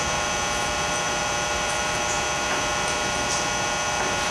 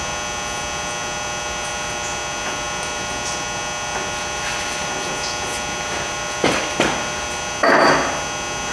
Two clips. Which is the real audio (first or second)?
second